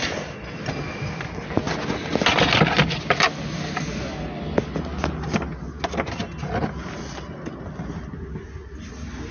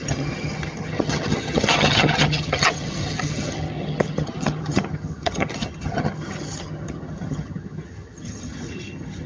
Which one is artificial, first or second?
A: second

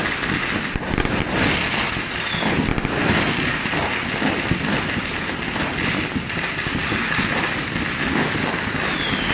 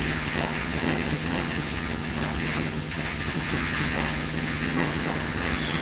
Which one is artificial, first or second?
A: second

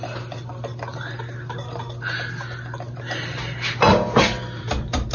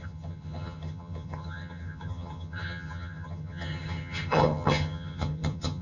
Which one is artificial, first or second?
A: second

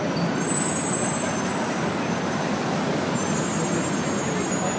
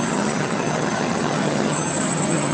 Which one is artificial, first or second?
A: second